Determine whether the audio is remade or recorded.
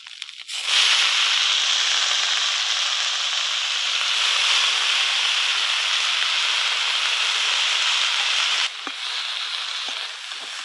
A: recorded